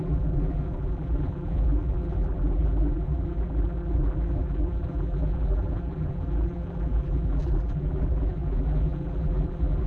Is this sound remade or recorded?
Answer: remade